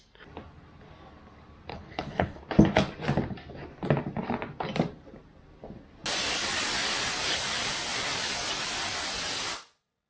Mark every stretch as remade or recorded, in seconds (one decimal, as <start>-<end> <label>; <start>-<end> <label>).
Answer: 0.0-1.7 recorded; 1.7-2.4 remade; 2.4-10.1 recorded